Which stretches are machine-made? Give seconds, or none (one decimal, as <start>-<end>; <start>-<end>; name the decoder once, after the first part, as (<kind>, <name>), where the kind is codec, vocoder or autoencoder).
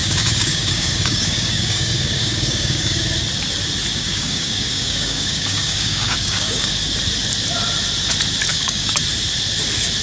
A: 0.0-3.0 (codec, DAC); 3.9-6.7; 8.5-9.0